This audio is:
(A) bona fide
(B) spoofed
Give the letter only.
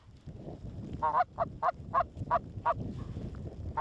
A